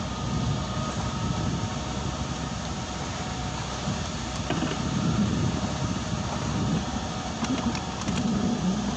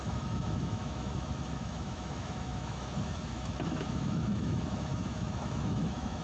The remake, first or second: second